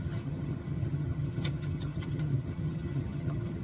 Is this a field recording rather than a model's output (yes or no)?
no